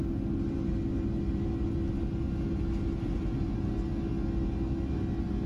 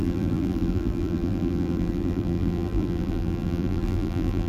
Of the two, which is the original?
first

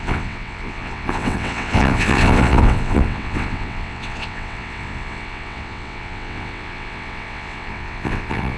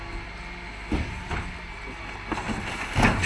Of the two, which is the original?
second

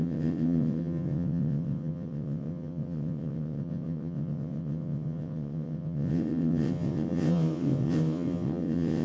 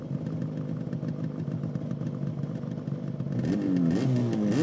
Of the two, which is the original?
second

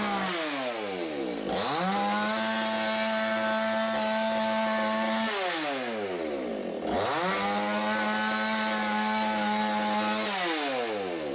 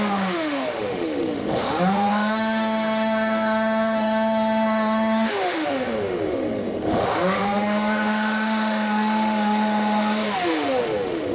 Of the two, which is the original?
first